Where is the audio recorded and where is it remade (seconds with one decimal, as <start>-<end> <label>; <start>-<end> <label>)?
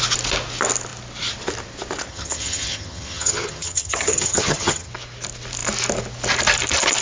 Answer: 0.0-2.1 recorded; 2.1-4.9 remade; 4.9-7.0 recorded